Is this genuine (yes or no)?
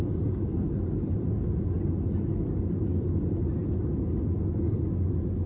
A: yes